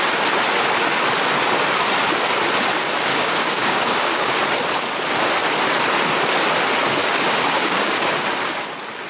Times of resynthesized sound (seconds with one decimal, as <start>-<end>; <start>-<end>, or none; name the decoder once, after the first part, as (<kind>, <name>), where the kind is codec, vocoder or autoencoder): 3.1-4.4 (codec, DAC); 7.0-8.1